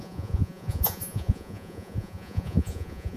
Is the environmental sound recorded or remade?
remade